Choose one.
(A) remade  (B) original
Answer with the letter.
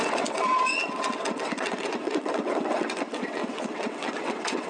A